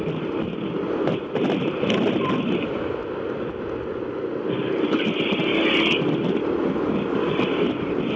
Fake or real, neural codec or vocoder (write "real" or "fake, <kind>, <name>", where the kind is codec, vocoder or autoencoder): real